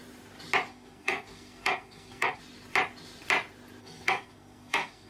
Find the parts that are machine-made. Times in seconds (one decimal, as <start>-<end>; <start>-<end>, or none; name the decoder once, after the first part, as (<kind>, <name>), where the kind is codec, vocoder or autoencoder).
0.7-2.4 (codec, SNAC); 3.8-5.1